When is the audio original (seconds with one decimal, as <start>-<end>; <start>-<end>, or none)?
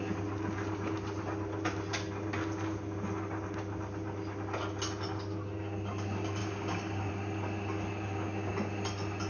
0.0-6.4; 7.1-9.3